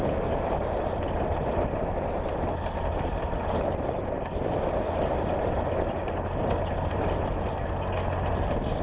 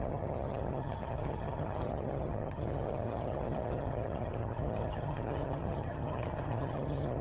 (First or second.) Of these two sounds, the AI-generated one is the second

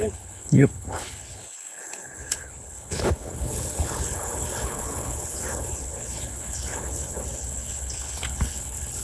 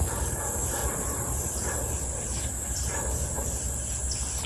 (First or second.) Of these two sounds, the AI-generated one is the first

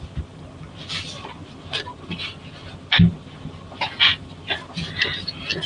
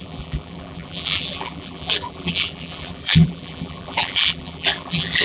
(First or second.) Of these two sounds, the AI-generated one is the second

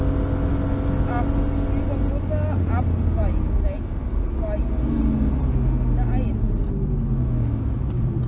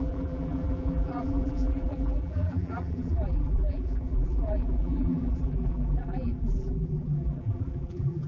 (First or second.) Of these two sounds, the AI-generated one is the second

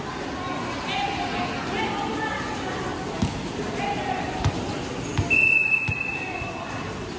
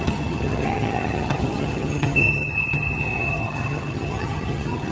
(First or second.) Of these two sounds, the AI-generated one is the second